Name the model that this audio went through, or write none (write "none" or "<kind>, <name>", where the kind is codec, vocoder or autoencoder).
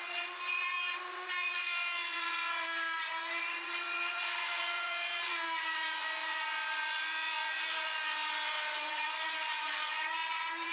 vocoder, Vocos